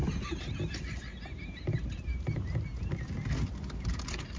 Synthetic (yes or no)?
no